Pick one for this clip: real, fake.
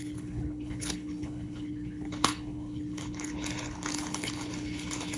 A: fake